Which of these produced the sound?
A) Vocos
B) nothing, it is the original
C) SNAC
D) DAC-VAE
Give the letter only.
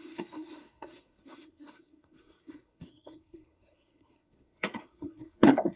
C